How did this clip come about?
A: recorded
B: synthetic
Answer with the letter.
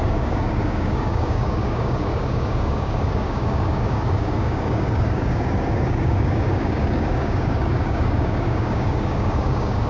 B